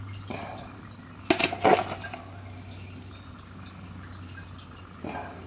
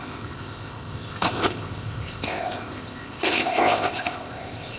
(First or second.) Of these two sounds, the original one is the first